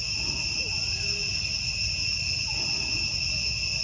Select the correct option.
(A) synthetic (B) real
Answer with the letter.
B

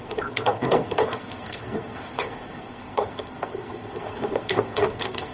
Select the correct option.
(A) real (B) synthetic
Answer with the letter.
B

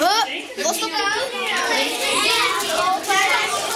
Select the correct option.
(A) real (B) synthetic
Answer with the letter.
A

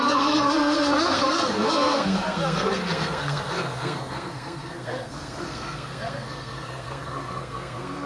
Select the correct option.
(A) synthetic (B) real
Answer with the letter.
A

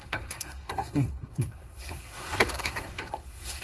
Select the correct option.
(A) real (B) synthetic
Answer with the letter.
B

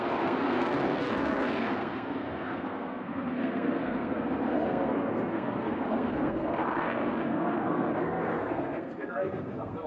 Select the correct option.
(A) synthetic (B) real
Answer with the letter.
A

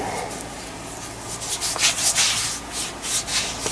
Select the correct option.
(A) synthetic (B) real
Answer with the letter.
B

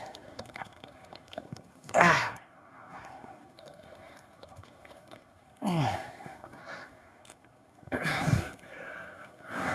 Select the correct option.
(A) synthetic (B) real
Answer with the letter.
A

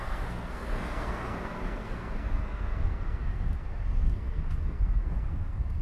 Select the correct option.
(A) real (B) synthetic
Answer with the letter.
B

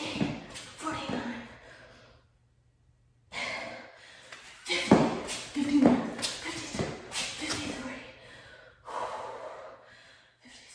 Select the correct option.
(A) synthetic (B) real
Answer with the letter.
B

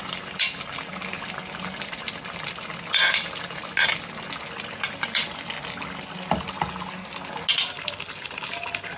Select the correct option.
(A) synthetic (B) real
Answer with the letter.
B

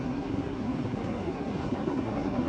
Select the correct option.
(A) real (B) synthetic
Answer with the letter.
B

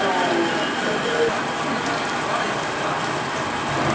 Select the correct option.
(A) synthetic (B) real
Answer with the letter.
B